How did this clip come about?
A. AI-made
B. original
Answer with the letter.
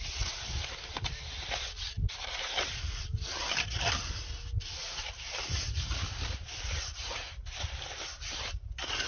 B